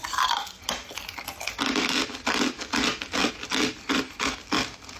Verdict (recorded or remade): recorded